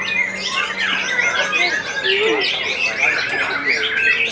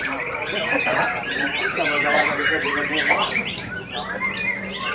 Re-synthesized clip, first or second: second